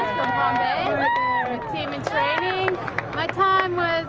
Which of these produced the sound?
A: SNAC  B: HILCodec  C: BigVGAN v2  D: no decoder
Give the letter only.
D